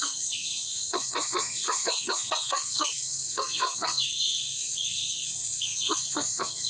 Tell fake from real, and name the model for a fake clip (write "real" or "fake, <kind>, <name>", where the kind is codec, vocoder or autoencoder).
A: fake, codec, SNAC